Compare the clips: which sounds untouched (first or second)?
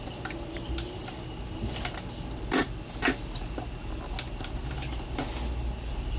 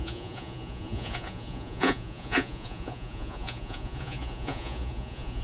first